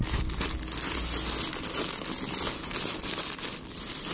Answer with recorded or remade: recorded